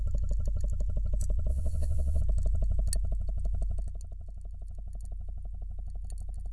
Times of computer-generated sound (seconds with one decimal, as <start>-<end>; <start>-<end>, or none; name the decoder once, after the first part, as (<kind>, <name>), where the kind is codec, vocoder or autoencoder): 1.5-2.2 (vocoder, WaveNeXt)